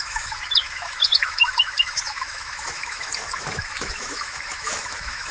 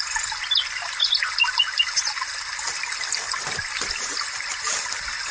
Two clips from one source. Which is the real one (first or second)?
second